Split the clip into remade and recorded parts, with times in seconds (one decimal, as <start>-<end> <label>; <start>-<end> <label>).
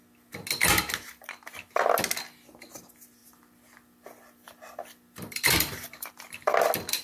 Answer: 0.0-3.2 recorded; 3.2-6.1 remade; 6.1-7.0 recorded